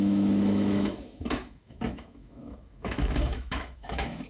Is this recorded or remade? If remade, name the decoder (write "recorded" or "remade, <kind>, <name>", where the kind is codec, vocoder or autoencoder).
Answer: remade, autoencoder, DAC-VAE